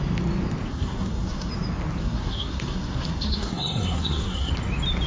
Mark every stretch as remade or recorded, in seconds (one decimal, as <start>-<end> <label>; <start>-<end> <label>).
0.0-0.7 recorded; 0.7-1.5 remade; 1.5-2.0 recorded; 2.0-4.5 remade; 4.5-5.1 recorded